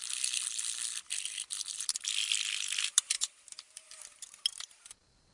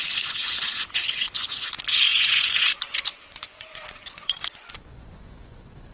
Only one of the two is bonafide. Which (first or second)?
first